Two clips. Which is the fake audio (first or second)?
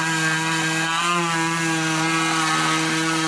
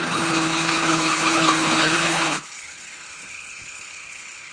second